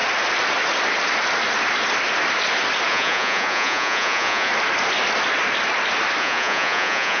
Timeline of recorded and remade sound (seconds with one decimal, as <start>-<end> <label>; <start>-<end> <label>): 0.0-2.9 recorded; 2.9-4.5 remade; 4.5-6.2 recorded; 6.2-7.2 remade